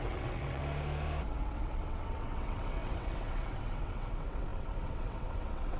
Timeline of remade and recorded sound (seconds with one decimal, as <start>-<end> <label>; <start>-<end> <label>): 0.0-0.6 remade; 0.6-1.2 recorded; 1.2-5.8 remade

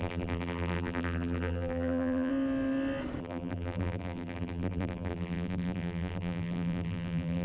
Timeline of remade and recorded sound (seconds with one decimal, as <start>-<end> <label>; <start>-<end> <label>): 0.0-2.3 remade; 2.3-3.2 recorded; 3.2-7.4 remade

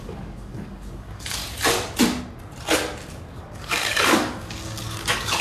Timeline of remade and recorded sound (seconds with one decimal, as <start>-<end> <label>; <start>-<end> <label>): 0.0-1.4 remade; 1.4-3.1 recorded; 3.1-5.4 remade

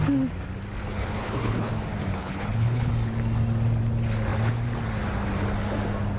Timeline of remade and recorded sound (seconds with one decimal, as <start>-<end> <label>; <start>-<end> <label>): 0.0-1.0 recorded; 1.0-1.7 remade; 1.7-2.1 recorded; 2.1-2.9 remade; 2.9-6.2 recorded